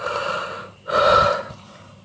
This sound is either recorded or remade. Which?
recorded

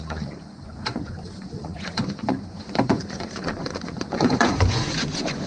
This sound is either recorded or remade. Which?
remade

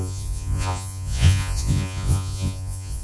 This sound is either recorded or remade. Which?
remade